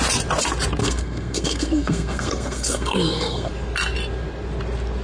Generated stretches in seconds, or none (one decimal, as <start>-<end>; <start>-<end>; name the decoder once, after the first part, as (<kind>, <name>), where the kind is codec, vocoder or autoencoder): 0.8-3.5 (codec, SNAC)